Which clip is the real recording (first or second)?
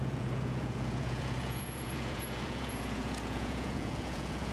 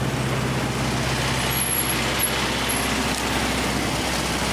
second